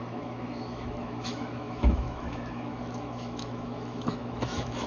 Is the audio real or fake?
fake